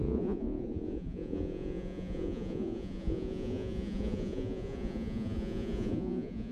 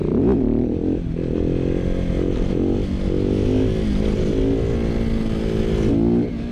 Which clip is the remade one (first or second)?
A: first